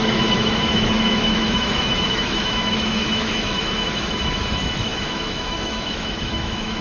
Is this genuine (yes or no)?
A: no